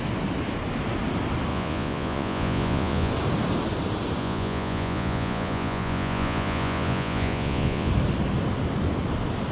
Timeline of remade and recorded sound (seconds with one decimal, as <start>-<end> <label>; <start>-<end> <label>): 0.0-1.5 recorded; 1.5-3.1 remade; 3.1-4.2 recorded; 4.2-7.9 remade; 7.9-9.5 recorded